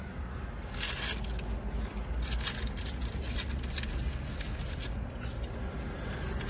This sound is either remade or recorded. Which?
recorded